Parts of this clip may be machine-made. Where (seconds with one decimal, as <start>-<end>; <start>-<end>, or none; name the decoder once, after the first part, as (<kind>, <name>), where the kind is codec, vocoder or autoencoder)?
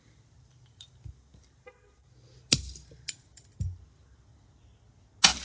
none